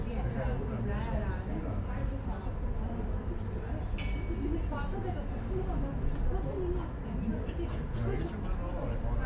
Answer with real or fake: real